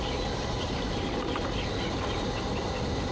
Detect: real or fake real